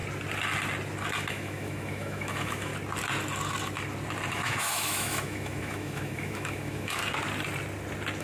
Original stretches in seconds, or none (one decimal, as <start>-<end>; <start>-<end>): 0.0-1.3; 2.7-4.3; 7.0-8.2